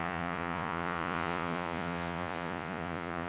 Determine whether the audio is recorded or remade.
remade